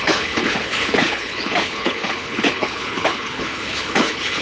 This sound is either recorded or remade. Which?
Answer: remade